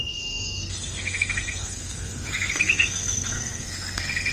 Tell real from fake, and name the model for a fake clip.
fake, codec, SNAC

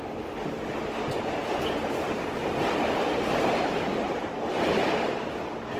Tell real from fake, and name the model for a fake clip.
real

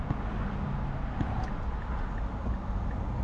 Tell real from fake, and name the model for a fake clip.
real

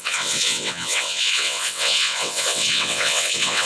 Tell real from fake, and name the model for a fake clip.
fake, vocoder, WaveNeXt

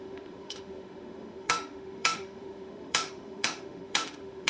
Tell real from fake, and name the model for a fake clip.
fake, autoencoder, DAC-VAE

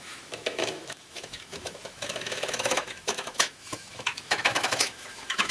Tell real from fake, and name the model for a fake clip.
fake, autoencoder, DAC-VAE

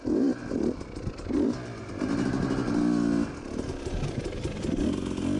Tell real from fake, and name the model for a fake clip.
real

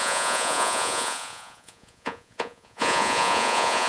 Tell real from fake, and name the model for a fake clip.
fake, vocoder, Vocos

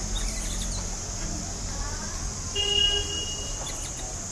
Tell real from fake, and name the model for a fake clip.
real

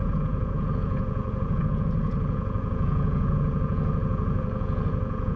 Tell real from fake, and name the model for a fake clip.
fake, vocoder, Vocos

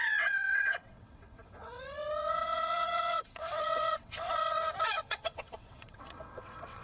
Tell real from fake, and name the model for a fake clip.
fake, vocoder, WaveNeXt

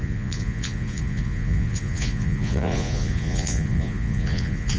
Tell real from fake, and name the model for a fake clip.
fake, vocoder, Vocos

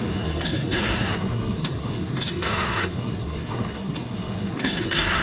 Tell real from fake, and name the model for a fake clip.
fake, codec, SNAC